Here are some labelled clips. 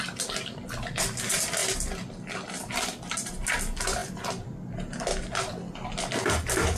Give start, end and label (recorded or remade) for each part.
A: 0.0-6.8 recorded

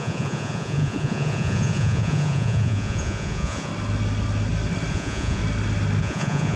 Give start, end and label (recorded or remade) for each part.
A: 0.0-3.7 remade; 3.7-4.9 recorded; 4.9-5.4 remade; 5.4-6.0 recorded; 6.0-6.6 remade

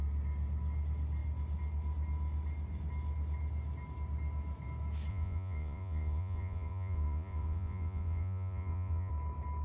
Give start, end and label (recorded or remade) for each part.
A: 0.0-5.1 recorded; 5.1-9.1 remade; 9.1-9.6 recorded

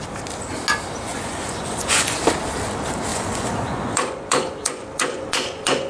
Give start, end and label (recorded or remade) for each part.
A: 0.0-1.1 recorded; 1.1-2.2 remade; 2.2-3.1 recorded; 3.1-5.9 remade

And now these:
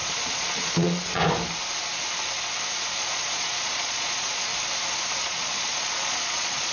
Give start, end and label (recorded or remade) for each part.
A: 0.0-1.2 remade; 1.2-2.9 recorded; 2.9-4.5 remade; 4.5-5.2 recorded; 5.2-6.7 remade